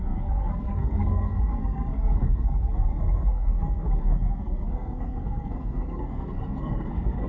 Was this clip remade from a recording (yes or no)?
yes